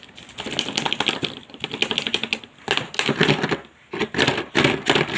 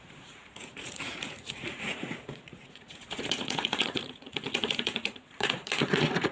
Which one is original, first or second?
first